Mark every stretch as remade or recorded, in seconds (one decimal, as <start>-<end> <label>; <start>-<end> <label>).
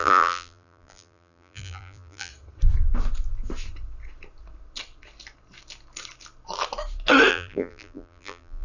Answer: 0.0-2.3 remade; 2.3-7.3 recorded; 7.3-8.6 remade